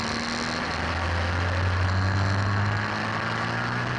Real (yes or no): yes